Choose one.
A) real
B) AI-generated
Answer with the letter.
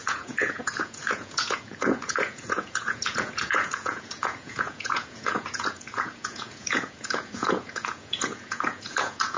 B